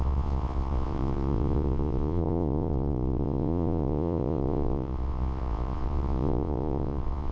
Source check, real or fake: fake